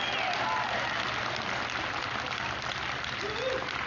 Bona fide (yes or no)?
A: yes